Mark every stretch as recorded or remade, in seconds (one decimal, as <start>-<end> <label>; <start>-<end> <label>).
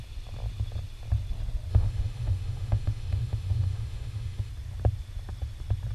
0.0-1.7 recorded; 1.7-4.5 remade; 4.5-5.9 recorded